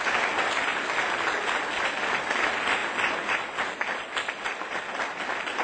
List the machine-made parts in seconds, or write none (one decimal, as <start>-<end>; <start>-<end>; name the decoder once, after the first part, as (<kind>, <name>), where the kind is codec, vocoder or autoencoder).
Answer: none